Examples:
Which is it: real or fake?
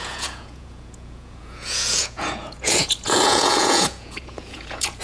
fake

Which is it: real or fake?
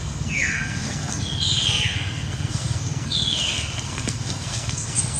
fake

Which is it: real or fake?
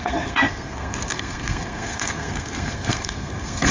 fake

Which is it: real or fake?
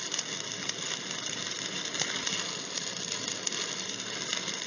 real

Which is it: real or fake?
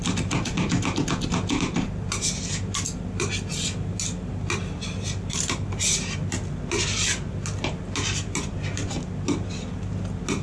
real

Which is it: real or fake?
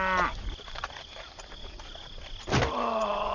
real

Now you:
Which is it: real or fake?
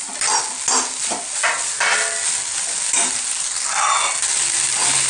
real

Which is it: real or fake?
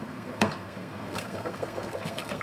fake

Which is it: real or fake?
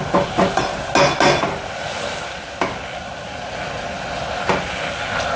real